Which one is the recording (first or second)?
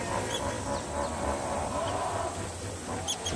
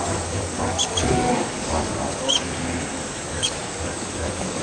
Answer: first